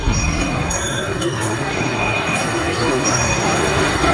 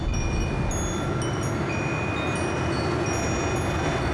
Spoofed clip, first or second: first